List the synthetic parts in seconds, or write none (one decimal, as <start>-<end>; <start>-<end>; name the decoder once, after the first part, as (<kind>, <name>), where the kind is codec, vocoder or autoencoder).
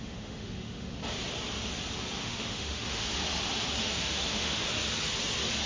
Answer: 0.0-1.0 (autoencoder, DAC-VAE); 2.2-3.1; 3.8-4.6